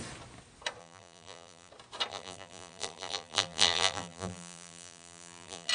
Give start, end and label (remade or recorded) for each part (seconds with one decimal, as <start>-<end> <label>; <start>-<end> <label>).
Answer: 0.0-0.8 recorded; 0.8-1.7 remade; 1.7-2.1 recorded; 2.1-5.7 remade